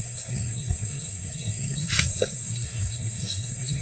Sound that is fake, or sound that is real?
fake